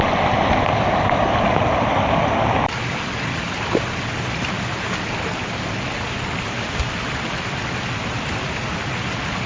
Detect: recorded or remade recorded